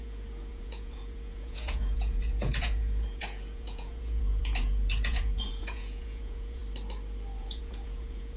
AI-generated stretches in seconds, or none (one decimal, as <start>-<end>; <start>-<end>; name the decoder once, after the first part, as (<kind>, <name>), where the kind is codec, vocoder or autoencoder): 0.0-6.6 (vocoder, Vocos); 7.4-8.4